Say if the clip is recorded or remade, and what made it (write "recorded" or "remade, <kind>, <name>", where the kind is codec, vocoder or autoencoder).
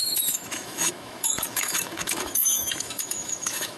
remade, autoencoder, DAC-VAE